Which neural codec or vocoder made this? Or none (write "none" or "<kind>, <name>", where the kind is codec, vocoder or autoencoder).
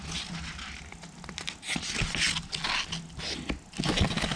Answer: none